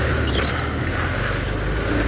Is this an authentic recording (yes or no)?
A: yes